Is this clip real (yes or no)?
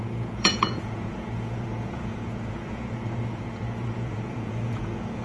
no